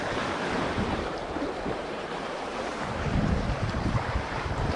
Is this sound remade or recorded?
remade